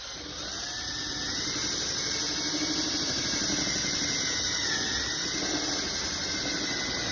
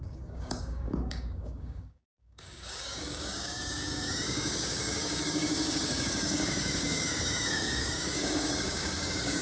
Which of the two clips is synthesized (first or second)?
second